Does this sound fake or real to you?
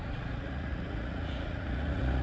fake